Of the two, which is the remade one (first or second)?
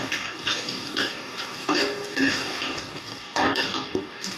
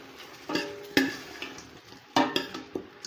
first